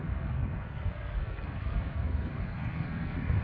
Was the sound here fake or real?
fake